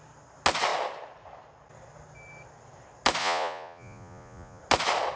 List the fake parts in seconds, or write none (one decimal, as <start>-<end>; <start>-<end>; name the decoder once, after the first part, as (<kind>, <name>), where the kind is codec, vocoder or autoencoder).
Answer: 3.2-4.6 (vocoder, Vocos)